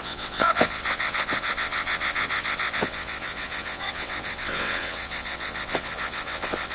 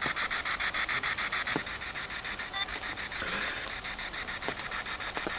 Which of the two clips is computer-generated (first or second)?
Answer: first